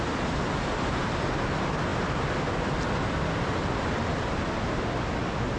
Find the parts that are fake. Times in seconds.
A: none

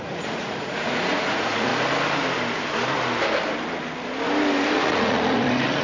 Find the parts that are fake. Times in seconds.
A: 0.0-1.7 (vocoder, Vocos); 4.7-5.8